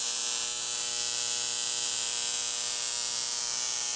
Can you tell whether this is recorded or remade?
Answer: recorded